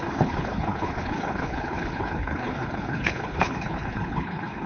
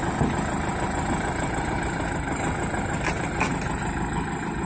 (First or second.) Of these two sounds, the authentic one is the second